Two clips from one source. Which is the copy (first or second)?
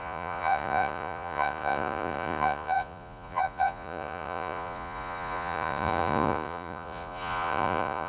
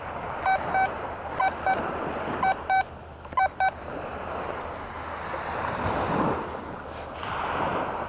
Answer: first